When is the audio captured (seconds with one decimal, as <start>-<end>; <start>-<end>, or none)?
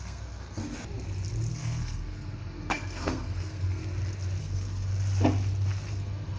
0.6-1.5; 3.8-4.4; 4.9-5.9